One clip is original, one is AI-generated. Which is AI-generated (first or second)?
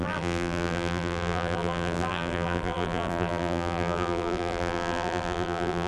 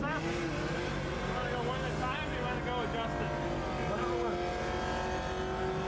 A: first